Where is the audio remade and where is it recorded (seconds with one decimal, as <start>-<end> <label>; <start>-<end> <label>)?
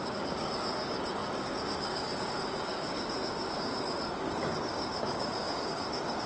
0.0-6.3 remade